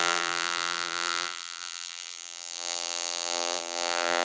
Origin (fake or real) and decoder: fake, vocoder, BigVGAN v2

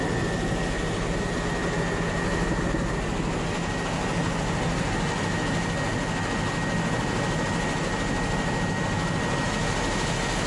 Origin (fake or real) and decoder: real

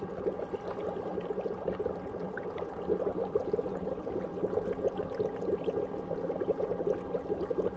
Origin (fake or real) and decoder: real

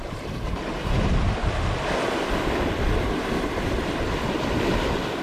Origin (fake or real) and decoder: real